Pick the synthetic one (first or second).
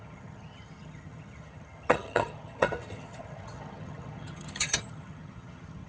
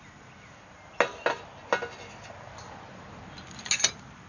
first